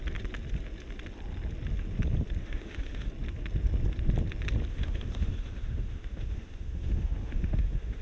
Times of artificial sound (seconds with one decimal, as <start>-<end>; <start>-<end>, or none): 2.4-3.1; 4.7-8.0